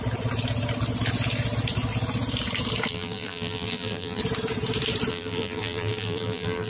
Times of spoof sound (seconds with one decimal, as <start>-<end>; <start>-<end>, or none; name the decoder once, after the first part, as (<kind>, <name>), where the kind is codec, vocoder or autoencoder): 2.9-4.2 (vocoder, BigVGAN v2); 5.1-6.7